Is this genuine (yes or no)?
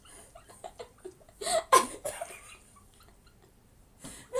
no